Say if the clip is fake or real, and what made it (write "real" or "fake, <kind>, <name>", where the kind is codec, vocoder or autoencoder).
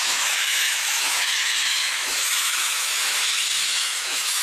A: fake, autoencoder, DAC-VAE